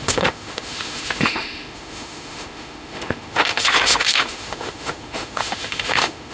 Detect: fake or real fake